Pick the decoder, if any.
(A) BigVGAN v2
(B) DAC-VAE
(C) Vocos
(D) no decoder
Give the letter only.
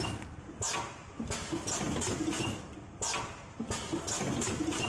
D